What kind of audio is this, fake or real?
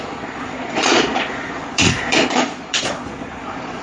fake